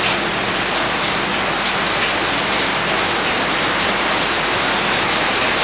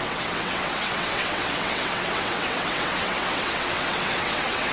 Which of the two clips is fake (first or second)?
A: second